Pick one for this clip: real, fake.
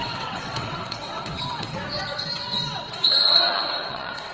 fake